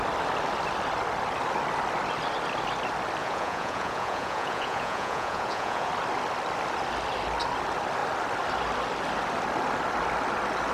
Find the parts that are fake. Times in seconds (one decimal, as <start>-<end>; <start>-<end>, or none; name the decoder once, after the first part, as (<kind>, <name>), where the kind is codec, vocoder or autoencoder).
3.2-5.9 (vocoder, Vocos)